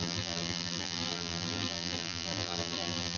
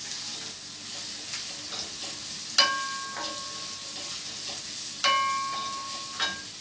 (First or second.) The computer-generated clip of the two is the first